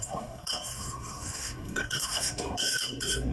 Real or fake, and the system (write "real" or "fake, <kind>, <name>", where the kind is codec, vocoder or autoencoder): fake, codec, SNAC